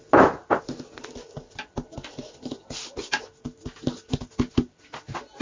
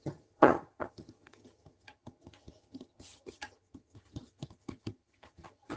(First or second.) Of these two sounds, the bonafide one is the first